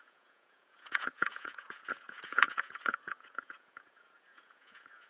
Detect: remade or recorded remade